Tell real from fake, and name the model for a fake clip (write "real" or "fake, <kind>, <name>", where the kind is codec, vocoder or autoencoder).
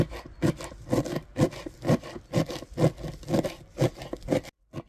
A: real